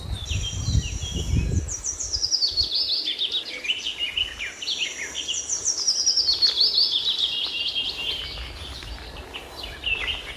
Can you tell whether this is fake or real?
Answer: real